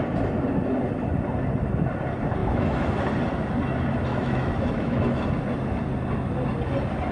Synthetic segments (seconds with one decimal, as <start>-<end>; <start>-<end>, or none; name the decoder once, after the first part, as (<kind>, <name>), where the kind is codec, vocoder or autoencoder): 2.4-3.1 (autoencoder, DAC-VAE); 4.1-5.3